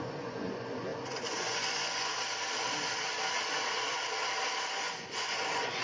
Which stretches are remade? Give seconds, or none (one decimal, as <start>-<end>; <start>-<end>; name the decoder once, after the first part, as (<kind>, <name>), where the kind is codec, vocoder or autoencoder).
0.0-2.1 (vocoder, Vocos); 4.7-5.8